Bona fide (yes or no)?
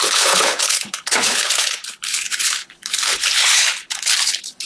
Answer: no